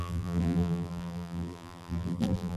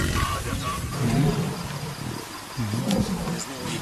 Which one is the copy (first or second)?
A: first